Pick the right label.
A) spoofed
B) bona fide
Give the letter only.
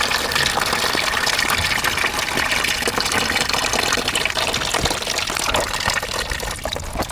B